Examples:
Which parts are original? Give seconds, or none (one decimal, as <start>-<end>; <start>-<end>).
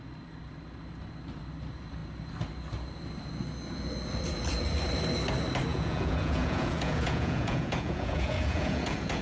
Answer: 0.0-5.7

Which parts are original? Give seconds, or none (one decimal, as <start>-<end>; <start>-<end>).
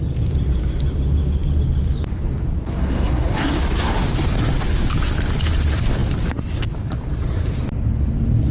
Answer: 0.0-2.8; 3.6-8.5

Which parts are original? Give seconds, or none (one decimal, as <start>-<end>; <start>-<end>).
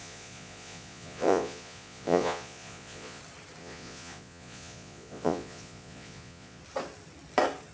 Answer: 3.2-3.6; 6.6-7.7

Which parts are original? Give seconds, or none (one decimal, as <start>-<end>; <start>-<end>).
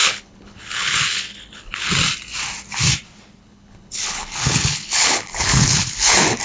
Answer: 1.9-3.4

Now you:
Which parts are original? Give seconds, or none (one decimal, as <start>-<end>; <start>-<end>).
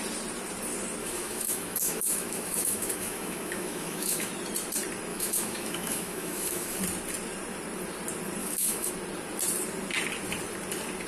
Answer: 0.0-1.0; 4.3-5.1; 6.8-8.4; 8.9-11.1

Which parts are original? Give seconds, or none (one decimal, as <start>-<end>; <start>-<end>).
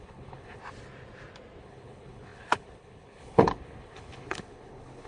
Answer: 0.6-1.6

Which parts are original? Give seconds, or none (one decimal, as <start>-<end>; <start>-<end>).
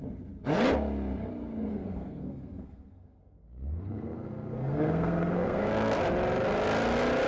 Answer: 0.0-1.7; 6.0-7.3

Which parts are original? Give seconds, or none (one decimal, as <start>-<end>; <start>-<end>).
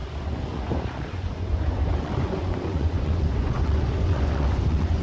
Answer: none